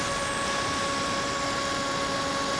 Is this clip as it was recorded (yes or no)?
yes